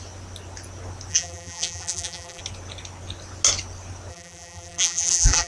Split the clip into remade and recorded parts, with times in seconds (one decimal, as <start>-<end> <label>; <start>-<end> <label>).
0.0-1.1 recorded; 1.1-2.4 remade; 2.4-4.1 recorded; 4.1-5.5 remade